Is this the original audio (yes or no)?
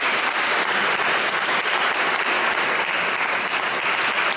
yes